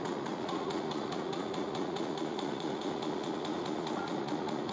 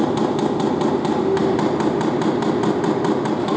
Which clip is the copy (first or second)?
first